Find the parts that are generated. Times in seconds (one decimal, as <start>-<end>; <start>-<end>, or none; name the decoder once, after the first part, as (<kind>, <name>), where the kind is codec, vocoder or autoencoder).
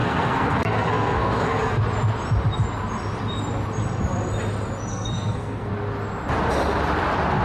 0.0-1.8 (codec, SNAC); 4.9-5.7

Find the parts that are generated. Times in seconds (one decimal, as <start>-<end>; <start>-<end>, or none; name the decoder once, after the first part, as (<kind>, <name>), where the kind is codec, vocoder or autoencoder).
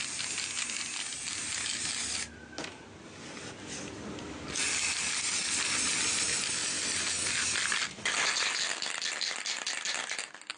none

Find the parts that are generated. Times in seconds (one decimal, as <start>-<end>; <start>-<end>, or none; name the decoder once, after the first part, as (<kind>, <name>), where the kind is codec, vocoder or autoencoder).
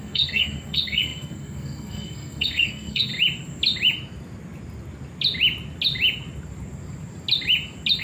0.0-3.1 (codec, SNAC)